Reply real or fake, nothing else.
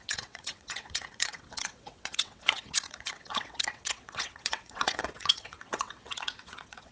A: fake